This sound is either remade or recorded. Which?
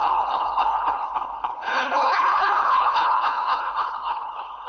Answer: remade